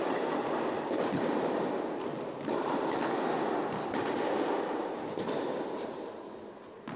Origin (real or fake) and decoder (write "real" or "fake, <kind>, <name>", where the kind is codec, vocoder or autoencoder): real